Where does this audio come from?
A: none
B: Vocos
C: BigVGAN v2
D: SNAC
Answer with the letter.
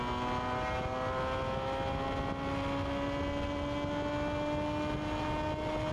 A